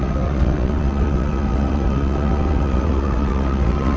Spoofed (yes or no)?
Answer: yes